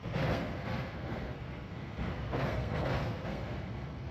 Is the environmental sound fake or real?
fake